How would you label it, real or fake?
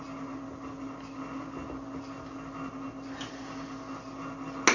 real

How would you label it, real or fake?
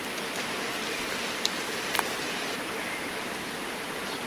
fake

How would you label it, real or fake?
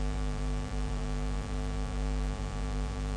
fake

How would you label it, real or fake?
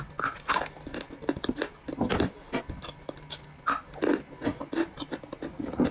real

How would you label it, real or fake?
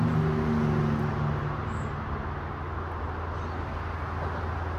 real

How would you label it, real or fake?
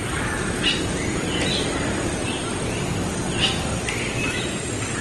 real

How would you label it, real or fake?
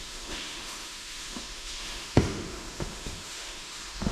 fake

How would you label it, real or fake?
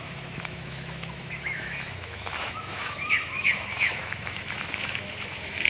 fake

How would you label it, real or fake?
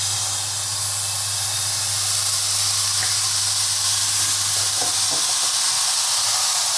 real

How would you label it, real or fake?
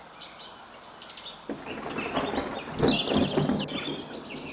real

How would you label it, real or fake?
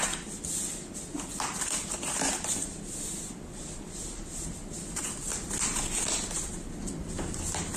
real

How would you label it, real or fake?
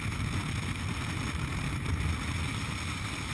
real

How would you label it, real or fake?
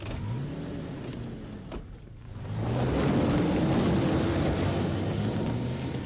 real